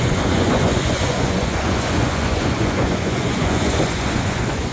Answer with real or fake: fake